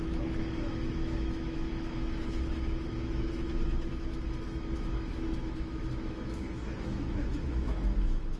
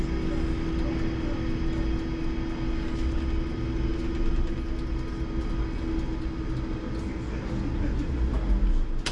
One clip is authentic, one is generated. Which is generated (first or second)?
first